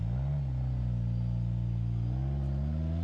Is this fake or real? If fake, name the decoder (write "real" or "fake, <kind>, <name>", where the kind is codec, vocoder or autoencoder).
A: real